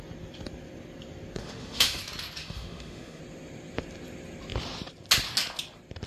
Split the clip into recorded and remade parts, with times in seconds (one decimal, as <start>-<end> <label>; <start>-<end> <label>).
0.0-1.4 recorded; 1.4-2.0 remade; 2.0-2.4 recorded; 2.4-3.2 remade; 3.2-6.1 recorded

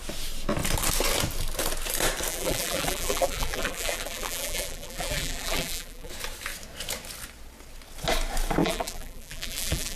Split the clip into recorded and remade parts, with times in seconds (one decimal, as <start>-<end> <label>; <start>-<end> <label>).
0.0-2.3 recorded; 2.3-6.1 remade; 6.1-8.6 recorded; 8.6-10.0 remade

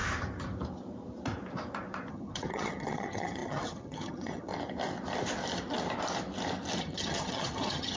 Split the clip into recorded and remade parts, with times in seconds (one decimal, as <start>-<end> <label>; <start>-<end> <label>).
0.0-2.1 recorded; 2.1-4.5 remade; 4.5-6.8 recorded; 6.8-8.0 remade

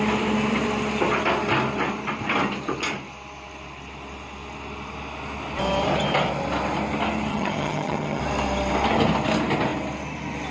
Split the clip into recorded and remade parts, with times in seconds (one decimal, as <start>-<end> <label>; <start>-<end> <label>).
0.0-7.3 recorded; 7.3-8.2 remade; 8.2-10.5 recorded

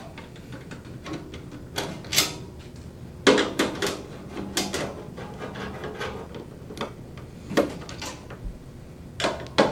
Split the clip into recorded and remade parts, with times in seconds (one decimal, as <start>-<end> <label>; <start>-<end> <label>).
0.0-9.7 recorded